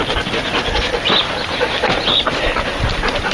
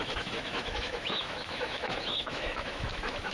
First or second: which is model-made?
second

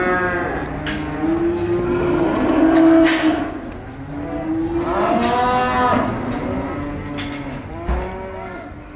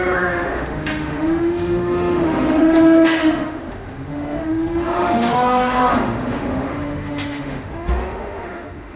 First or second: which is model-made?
second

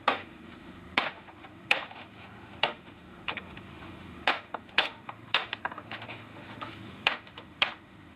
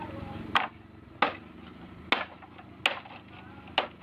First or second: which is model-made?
first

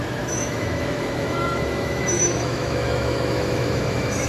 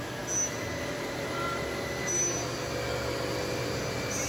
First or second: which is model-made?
first